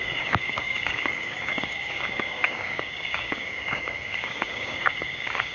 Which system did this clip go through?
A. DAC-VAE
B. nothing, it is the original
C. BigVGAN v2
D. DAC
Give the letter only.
D